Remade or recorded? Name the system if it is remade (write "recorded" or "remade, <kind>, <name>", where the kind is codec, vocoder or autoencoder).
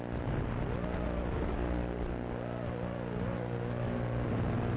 recorded